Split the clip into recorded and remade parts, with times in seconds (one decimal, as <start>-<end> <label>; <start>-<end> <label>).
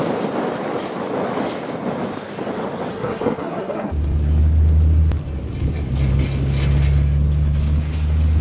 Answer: 0.0-2.9 recorded; 2.9-3.9 remade; 3.9-8.4 recorded